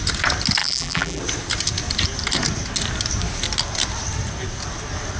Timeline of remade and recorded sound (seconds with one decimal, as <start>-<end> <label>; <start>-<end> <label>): 0.0-0.6 recorded; 0.6-1.2 remade; 1.2-5.2 recorded